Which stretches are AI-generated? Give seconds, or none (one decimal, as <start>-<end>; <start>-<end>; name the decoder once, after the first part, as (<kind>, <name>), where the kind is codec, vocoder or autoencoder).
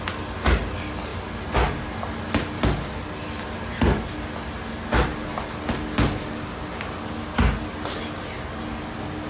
none